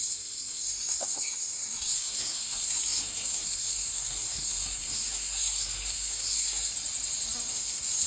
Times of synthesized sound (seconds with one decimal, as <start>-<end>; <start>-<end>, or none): 0.0-6.7; 7.5-8.1